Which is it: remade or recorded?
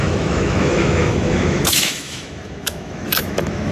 remade